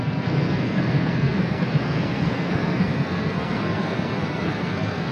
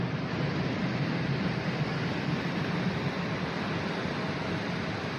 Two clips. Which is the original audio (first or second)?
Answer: second